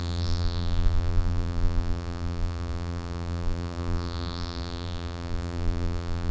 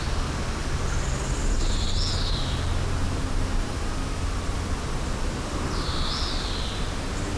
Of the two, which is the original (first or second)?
second